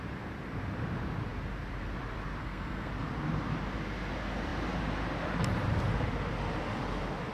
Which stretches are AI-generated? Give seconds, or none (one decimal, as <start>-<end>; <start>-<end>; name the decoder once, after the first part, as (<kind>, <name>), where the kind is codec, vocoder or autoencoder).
2.4-2.9 (codec, SNAC)